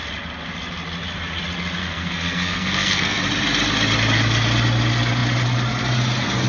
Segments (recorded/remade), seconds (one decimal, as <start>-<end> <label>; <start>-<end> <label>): 0.0-1.8 recorded; 1.8-3.2 remade; 3.2-6.5 recorded